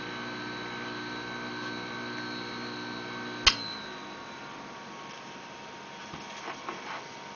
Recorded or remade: recorded